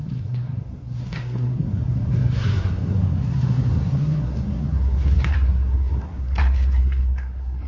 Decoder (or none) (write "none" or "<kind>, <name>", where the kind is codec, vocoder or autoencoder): codec, SNAC